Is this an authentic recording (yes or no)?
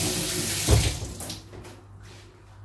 yes